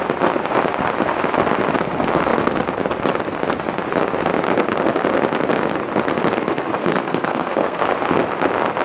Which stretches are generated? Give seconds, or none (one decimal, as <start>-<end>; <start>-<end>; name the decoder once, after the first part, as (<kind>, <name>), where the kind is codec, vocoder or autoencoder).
6.8-7.8 (codec, SNAC)